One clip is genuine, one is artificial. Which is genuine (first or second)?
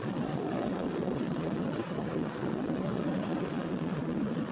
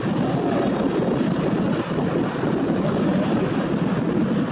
second